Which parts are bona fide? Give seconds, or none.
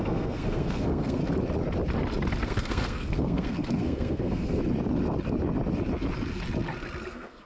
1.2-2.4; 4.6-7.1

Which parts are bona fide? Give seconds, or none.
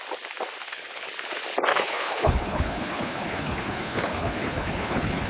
0.0-0.6; 1.1-1.7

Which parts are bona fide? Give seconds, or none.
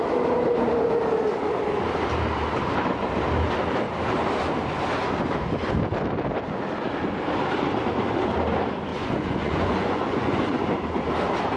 0.0-8.9; 10.7-11.6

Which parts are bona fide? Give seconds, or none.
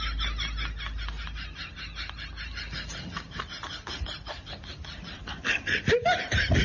0.0-4.7; 5.9-6.6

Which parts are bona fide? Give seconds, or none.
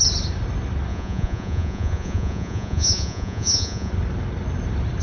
0.0-0.9; 3.9-5.0